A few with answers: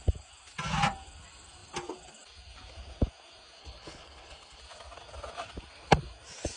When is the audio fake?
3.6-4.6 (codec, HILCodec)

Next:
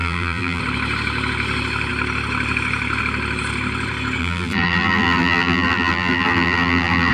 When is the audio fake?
0.0-0.6 (vocoder, BigVGAN v2); 4.2-7.1

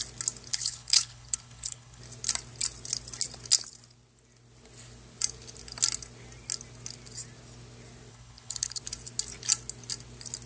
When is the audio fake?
0.5-2.0 (codec, HILCodec); 8.1-8.8